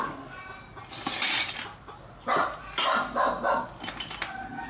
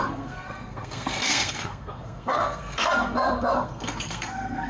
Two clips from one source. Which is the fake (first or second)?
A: second